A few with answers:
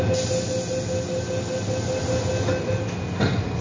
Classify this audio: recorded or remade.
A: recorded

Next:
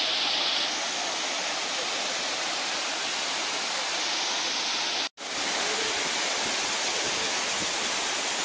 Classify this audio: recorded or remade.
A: recorded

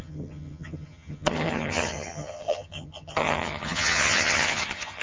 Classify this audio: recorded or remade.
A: remade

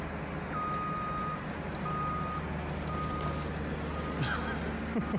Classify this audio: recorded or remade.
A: recorded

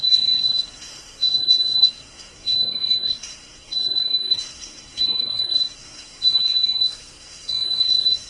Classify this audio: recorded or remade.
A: remade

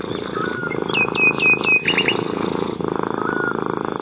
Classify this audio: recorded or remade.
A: recorded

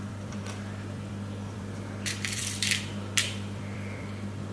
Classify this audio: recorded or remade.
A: remade